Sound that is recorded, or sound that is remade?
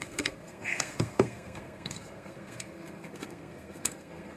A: remade